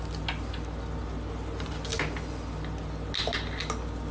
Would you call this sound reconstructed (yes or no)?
no